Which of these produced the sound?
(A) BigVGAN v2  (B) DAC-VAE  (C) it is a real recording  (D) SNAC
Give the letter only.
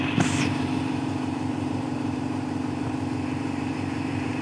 A